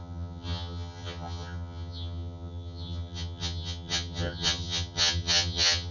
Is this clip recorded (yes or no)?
no